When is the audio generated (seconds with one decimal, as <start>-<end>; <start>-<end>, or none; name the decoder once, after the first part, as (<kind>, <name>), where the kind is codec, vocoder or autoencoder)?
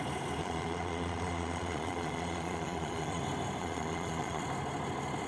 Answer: 0.4-3.2 (vocoder, Vocos); 3.6-4.4